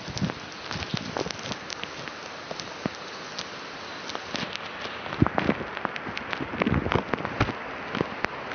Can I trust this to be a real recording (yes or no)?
yes